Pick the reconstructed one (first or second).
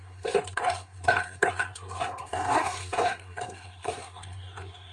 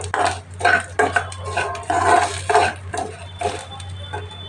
first